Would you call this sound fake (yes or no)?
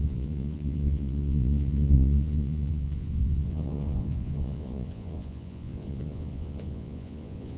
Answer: yes